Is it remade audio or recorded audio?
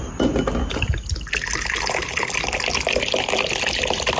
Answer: recorded